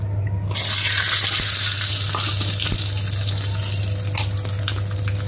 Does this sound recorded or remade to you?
recorded